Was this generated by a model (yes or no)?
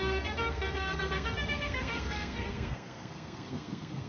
yes